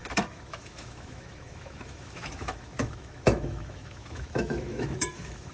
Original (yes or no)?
no